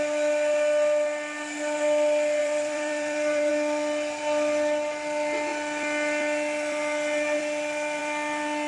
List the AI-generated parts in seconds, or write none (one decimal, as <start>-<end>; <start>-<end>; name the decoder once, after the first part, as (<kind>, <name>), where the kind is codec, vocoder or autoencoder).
2.4-3.5 (vocoder, BigVGAN v2)